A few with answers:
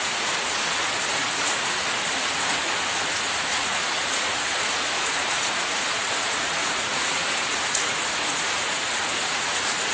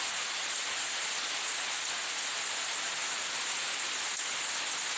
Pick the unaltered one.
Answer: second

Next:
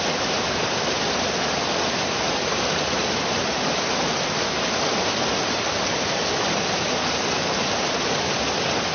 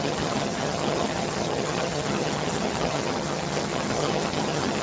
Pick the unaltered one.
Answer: first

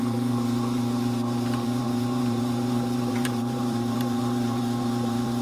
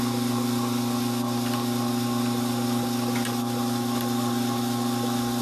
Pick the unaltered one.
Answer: second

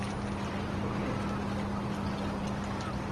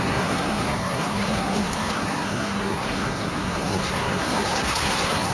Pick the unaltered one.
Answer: first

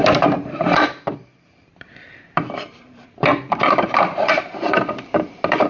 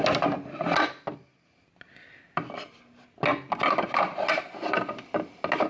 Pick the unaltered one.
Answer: second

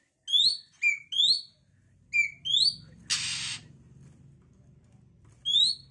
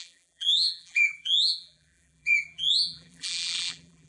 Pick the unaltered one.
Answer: first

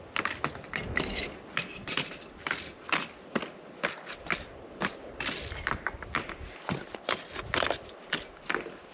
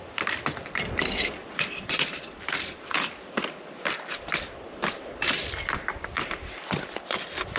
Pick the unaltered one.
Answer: first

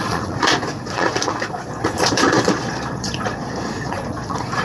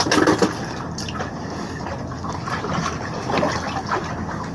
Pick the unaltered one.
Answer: second